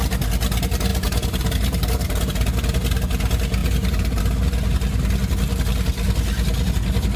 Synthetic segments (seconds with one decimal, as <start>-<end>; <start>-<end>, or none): 0.9-2.3; 3.6-4.2